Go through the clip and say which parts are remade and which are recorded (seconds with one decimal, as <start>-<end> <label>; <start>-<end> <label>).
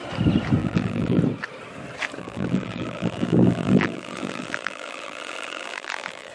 0.0-0.6 recorded; 0.6-1.2 remade; 1.2-2.2 recorded; 2.2-6.3 remade